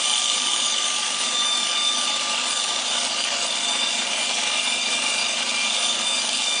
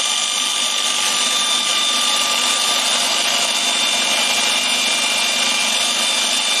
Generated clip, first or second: first